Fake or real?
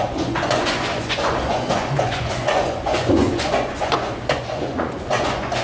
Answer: fake